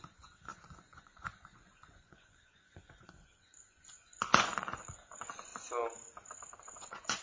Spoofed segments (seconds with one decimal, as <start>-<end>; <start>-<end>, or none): 0.0-5.5; 6.6-7.2